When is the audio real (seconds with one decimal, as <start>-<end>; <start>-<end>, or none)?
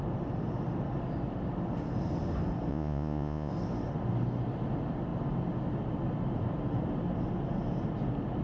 0.0-2.7; 3.5-8.4